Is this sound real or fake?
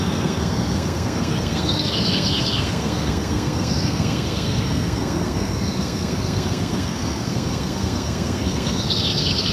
fake